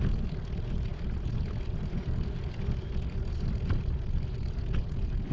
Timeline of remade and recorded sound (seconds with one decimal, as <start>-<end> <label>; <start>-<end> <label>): 0.0-5.3 recorded